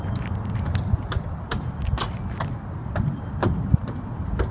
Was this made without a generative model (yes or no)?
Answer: yes